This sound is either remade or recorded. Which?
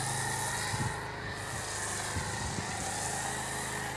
recorded